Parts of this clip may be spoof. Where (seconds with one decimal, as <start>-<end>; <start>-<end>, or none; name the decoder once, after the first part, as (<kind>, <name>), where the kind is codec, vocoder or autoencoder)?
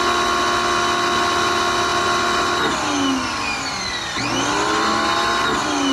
none